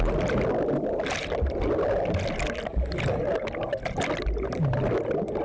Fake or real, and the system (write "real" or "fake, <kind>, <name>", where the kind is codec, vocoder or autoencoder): real